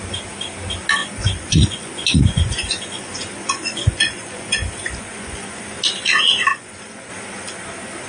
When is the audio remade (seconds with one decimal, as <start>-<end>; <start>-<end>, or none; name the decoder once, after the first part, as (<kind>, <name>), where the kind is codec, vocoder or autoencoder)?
1.0-5.8 (vocoder, Vocos); 6.5-7.1